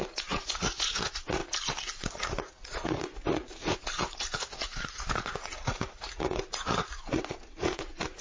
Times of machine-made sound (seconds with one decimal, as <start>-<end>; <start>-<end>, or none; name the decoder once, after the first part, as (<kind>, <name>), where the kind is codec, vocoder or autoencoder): 0.0-1.4 (vocoder, Vocos); 2.2-8.2